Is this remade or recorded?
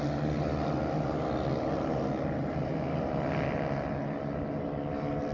recorded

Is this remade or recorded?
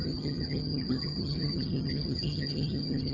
remade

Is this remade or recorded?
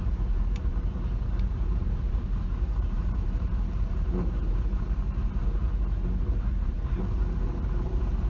remade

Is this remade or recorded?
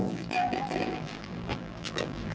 remade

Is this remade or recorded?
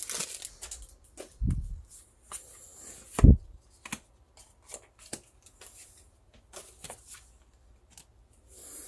recorded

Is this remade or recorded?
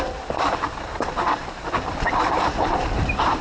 remade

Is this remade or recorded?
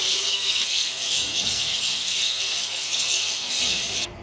remade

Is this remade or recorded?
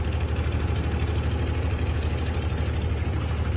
recorded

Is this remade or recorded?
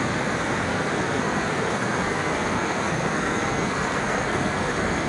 remade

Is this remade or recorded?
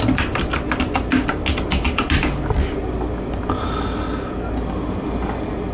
recorded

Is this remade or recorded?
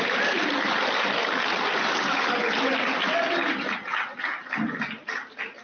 recorded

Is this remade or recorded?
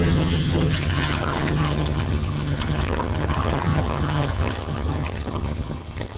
remade